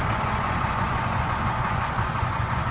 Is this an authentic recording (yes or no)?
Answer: no